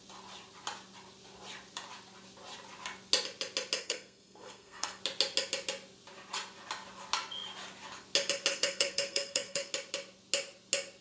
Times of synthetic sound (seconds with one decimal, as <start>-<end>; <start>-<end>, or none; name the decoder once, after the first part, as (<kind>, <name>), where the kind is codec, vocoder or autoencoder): 3.8-5.0 (codec, SNAC); 8.5-9.7